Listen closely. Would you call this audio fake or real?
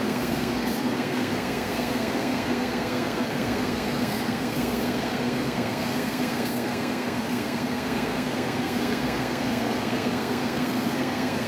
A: fake